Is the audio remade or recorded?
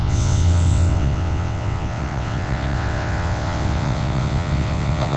remade